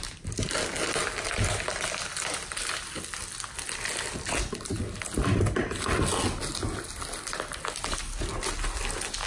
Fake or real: real